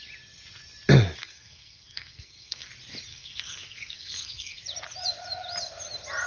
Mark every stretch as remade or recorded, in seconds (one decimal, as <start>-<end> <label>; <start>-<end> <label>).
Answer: 0.0-1.2 recorded; 1.2-2.7 remade; 2.7-3.1 recorded; 3.1-4.6 remade; 4.6-6.3 recorded

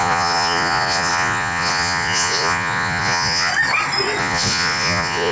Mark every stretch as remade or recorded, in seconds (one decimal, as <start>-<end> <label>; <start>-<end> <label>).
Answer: 0.0-3.5 remade; 3.5-4.2 recorded; 4.2-5.3 remade

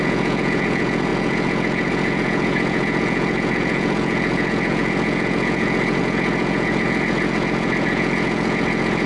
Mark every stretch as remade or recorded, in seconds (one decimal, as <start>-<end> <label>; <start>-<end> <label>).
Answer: 0.0-9.1 remade

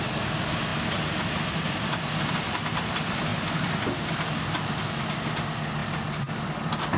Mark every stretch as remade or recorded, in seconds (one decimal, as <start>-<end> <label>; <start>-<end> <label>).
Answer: 0.0-7.0 recorded

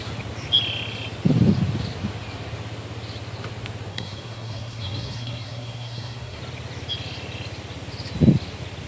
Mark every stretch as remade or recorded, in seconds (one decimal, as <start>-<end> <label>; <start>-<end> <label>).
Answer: 0.0-3.9 recorded; 3.9-6.4 remade; 6.4-8.9 recorded